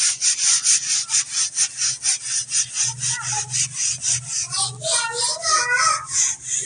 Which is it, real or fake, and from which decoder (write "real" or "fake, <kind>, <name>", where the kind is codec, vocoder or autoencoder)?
real